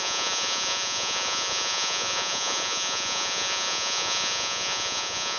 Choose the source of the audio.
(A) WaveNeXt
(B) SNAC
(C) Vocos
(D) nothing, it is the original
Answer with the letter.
C